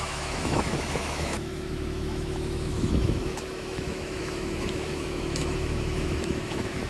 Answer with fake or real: fake